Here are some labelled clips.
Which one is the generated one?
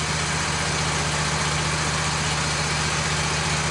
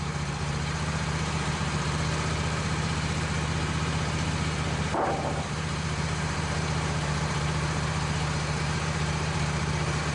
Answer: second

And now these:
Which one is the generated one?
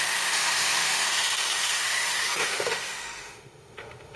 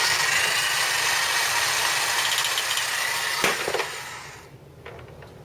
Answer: first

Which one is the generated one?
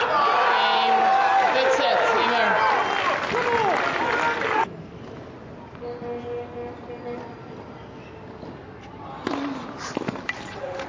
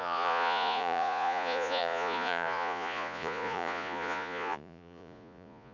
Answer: second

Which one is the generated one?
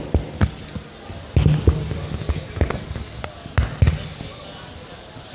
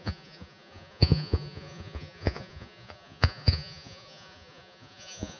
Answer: second